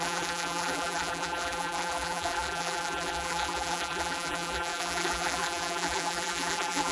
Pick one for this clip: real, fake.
fake